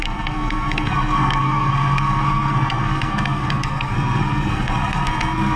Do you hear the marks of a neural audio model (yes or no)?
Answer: yes